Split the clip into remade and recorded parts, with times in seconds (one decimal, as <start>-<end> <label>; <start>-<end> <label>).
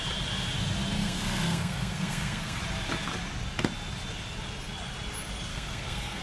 0.0-1.0 recorded; 1.0-2.6 remade; 2.6-5.5 recorded; 5.5-6.2 remade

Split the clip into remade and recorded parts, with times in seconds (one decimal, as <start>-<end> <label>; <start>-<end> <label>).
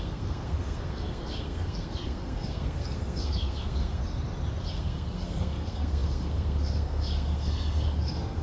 0.0-4.0 remade; 4.0-4.7 recorded; 4.7-8.4 remade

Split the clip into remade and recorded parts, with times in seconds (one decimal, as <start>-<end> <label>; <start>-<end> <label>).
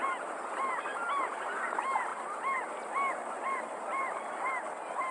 0.0-5.1 remade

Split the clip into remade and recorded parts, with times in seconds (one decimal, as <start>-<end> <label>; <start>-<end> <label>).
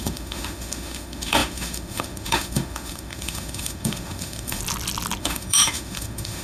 0.0-4.6 remade; 4.6-5.2 recorded; 5.2-6.4 remade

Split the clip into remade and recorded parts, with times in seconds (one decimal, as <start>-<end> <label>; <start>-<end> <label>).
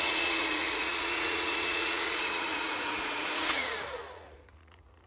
0.0-5.1 remade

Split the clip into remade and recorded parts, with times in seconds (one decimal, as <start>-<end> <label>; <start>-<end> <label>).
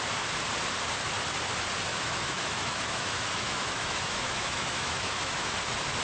0.0-1.9 recorded; 1.9-5.5 remade; 5.5-6.0 recorded